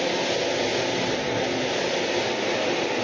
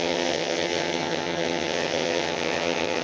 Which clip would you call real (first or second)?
first